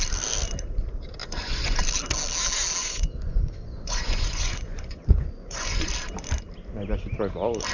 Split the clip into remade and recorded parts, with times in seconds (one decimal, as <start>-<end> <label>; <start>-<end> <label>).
0.0-1.2 recorded; 1.2-1.8 remade; 1.8-2.8 recorded; 2.8-5.9 remade; 5.9-7.7 recorded